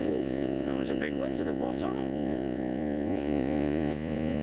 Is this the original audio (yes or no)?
no